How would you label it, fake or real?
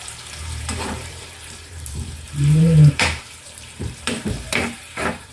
fake